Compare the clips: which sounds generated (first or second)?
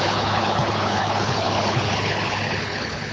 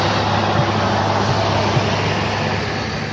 first